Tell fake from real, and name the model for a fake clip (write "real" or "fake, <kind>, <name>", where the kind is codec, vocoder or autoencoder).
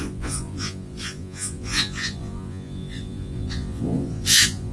fake, vocoder, Vocos